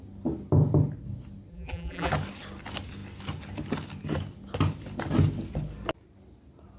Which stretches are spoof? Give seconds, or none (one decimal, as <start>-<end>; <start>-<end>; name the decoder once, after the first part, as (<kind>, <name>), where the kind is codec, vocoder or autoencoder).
1.5-2.1 (vocoder, BigVGAN v2)